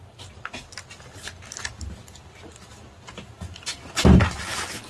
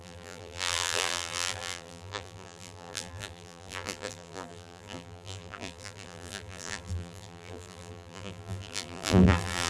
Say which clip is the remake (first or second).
second